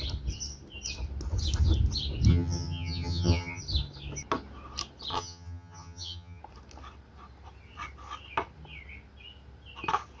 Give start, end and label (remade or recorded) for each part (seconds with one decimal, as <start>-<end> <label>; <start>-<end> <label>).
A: 0.0-2.3 recorded; 2.3-3.6 remade; 3.6-5.1 recorded; 5.1-6.4 remade; 6.4-10.2 recorded